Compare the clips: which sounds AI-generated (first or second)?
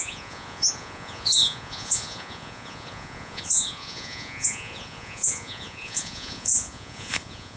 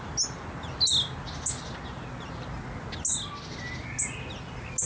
first